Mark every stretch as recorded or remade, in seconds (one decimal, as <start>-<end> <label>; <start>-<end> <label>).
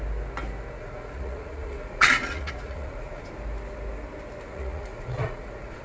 0.0-0.8 recorded; 0.8-3.3 remade; 3.3-4.5 recorded; 4.5-5.8 remade